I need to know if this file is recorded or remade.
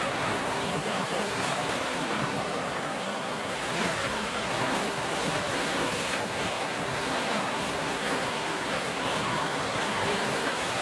remade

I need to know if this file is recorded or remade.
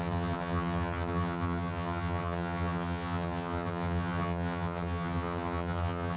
remade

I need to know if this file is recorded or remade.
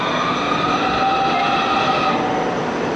recorded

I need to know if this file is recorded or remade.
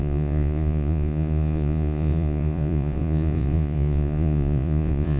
remade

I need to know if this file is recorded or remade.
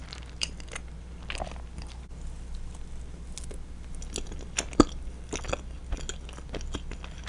recorded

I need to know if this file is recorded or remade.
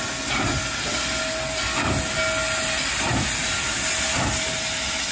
recorded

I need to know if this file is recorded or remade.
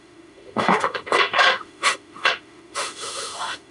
remade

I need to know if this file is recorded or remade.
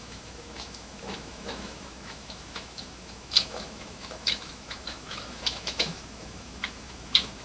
remade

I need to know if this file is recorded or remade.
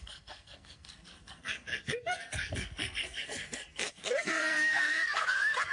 remade